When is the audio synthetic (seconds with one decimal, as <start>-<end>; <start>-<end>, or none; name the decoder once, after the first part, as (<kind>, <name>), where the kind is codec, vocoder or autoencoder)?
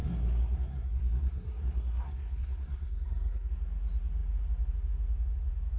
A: 0.0-3.5 (codec, SNAC)